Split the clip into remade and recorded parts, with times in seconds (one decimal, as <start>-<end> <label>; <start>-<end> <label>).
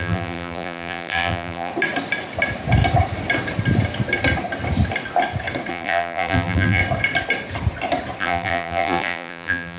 0.0-1.7 remade; 1.7-5.7 recorded; 5.7-6.8 remade; 6.8-8.2 recorded; 8.2-9.8 remade